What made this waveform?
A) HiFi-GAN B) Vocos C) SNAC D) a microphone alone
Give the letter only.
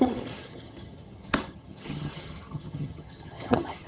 A